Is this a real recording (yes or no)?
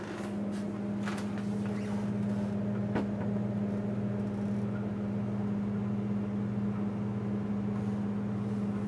yes